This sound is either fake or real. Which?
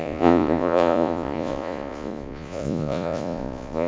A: fake